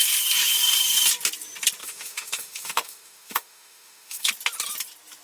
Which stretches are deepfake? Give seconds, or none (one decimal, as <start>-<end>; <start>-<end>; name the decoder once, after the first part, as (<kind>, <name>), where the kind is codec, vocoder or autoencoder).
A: 1.8-4.3 (autoencoder, DAC-VAE)